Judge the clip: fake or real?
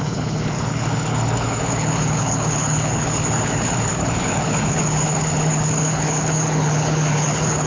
fake